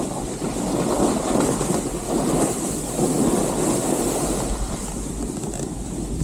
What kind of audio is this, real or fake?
real